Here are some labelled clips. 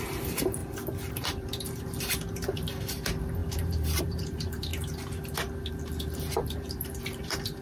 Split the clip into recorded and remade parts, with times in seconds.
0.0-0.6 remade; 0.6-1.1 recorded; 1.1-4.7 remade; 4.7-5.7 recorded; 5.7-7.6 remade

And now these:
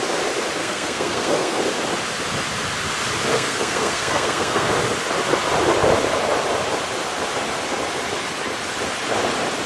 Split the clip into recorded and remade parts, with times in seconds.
0.0-0.6 recorded; 0.6-1.6 remade; 1.6-3.3 recorded; 3.3-4.7 remade; 4.7-9.7 recorded

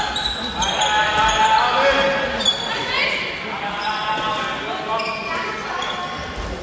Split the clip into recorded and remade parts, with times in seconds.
0.0-6.6 recorded

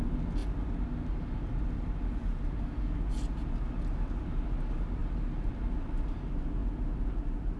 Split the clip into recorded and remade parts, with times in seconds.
0.0-5.0 recorded; 5.0-5.5 remade; 5.5-7.6 recorded